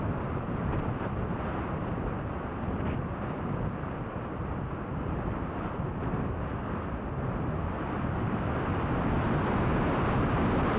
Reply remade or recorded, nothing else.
recorded